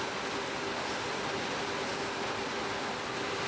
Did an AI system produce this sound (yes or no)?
no